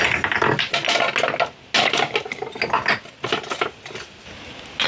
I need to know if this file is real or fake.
real